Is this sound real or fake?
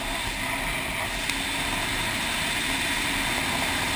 real